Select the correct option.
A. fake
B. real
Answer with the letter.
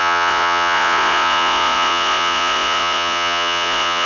A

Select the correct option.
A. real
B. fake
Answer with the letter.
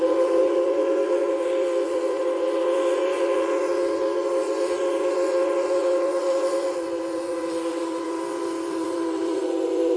B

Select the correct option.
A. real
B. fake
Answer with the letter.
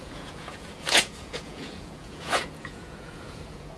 B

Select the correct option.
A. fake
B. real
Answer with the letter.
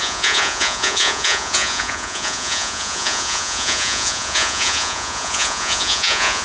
A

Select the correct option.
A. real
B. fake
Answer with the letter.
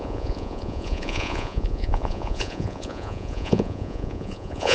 B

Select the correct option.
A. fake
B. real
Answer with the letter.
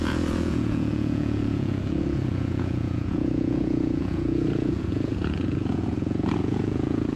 A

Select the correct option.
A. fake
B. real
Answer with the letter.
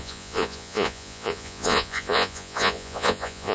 A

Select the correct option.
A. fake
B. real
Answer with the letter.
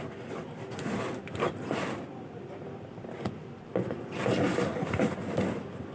B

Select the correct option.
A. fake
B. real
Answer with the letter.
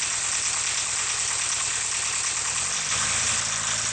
B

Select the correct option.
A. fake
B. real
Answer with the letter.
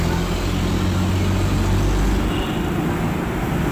B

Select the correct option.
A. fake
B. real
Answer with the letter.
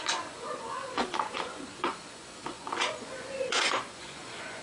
A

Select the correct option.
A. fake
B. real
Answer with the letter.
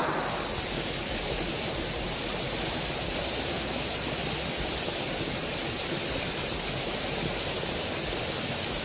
B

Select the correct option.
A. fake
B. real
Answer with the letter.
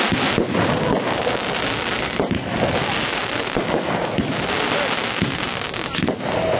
B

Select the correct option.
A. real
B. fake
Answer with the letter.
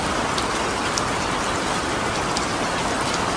A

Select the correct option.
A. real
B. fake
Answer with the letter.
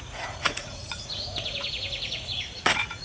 B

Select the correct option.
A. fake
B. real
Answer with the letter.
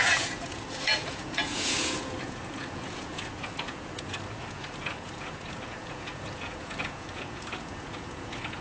A